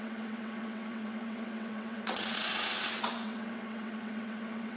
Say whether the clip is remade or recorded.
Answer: remade